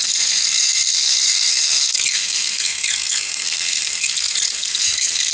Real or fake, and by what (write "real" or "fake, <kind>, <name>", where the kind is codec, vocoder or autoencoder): fake, codec, SNAC